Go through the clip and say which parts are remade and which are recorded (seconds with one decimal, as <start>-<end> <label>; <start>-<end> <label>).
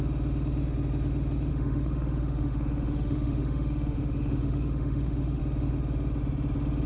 0.0-1.5 recorded; 1.5-5.4 remade; 5.4-6.9 recorded